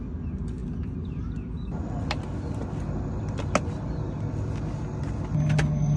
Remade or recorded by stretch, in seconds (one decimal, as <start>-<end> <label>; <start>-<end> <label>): 0.0-6.0 recorded